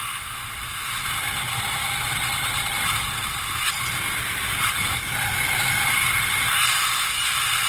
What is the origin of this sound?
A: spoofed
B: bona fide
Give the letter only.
B